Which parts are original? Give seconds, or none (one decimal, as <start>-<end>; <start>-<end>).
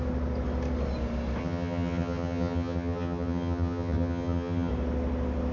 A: 0.0-1.4; 4.7-5.5